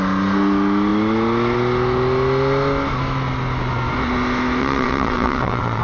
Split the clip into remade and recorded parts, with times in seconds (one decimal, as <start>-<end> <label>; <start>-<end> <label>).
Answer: 0.0-4.6 recorded; 4.6-5.8 remade